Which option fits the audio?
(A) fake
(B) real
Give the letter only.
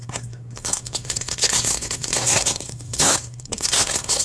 A